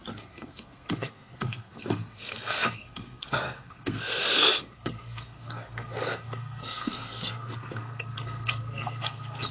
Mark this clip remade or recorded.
remade